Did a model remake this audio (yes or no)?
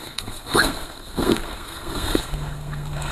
yes